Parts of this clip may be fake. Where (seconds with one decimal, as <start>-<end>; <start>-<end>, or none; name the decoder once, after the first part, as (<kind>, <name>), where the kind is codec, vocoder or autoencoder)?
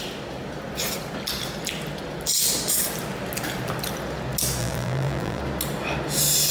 4.6-5.4 (vocoder, BigVGAN v2)